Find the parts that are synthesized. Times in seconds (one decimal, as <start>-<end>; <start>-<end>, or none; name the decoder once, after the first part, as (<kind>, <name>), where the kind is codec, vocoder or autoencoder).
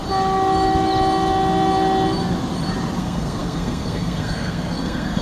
3.0-5.2 (codec, SNAC)